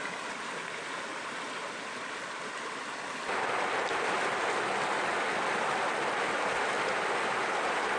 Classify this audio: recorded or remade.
recorded